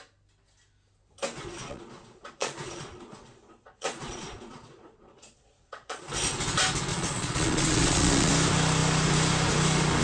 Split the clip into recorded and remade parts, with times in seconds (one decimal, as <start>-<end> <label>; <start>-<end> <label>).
0.0-1.6 recorded; 1.6-6.0 remade; 6.0-6.9 recorded; 6.9-8.3 remade; 8.3-10.0 recorded